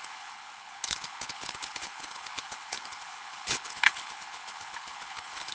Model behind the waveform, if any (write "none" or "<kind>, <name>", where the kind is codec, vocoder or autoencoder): codec, HILCodec